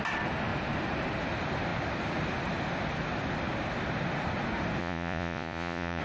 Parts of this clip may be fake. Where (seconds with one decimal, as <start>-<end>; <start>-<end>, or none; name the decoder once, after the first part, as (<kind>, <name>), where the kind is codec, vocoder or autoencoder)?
4.8-6.0 (vocoder, Vocos)